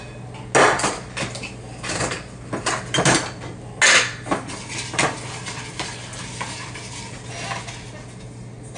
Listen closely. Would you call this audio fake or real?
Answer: real